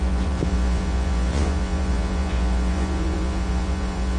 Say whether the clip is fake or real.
fake